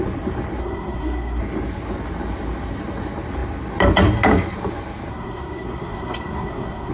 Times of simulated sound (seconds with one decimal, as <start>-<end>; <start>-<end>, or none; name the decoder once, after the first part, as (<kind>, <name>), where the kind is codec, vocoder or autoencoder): 0.6-1.4 (codec, SNAC); 5.1-6.9